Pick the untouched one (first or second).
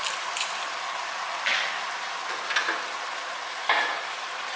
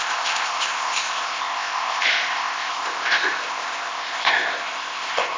first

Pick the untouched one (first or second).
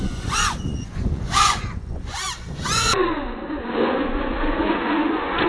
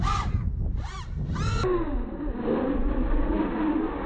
second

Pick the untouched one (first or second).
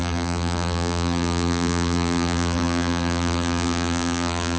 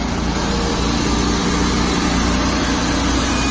second